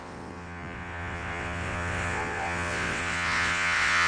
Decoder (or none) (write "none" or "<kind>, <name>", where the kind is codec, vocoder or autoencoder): vocoder, WaveNeXt